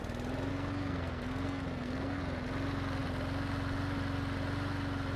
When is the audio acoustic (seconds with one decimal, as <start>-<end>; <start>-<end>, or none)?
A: 0.0-0.5; 2.2-5.2